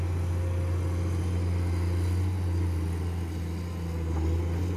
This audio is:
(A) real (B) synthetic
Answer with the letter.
A